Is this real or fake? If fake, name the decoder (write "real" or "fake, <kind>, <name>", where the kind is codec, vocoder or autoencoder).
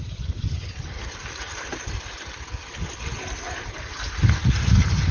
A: real